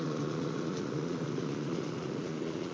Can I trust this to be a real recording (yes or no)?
no